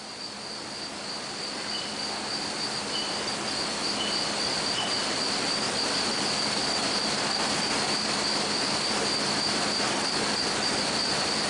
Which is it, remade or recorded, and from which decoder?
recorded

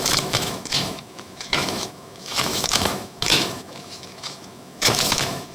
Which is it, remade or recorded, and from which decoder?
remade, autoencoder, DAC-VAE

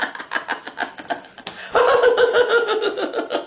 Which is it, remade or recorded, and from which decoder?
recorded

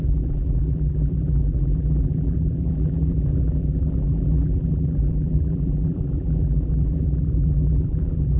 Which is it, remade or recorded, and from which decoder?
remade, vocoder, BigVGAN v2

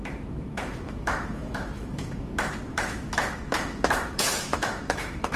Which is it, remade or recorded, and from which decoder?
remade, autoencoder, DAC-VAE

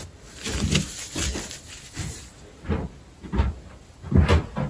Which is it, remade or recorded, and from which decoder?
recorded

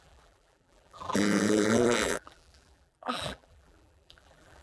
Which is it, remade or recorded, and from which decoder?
remade, vocoder, BigVGAN v2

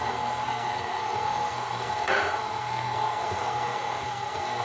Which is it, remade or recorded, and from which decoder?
remade, codec, SNAC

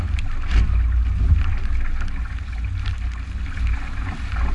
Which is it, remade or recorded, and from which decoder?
recorded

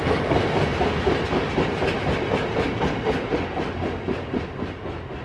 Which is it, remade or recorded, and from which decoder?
recorded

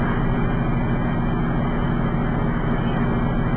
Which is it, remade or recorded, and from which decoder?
recorded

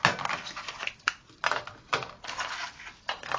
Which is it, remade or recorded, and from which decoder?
recorded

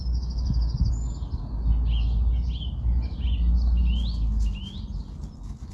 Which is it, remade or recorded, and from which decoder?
recorded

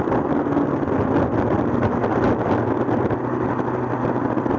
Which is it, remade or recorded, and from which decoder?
recorded